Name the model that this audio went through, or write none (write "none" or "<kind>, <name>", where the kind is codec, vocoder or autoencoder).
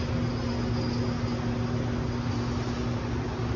none